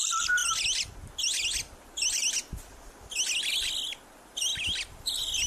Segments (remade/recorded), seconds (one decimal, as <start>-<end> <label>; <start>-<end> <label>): 0.0-5.5 recorded